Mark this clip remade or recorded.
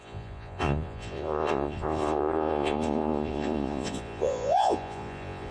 remade